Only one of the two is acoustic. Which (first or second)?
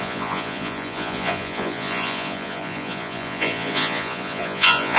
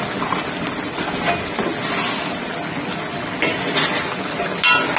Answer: second